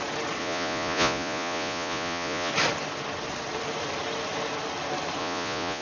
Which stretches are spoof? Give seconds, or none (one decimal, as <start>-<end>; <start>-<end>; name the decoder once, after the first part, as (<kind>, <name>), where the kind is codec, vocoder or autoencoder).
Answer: 0.4-2.5 (vocoder, Vocos); 5.2-5.8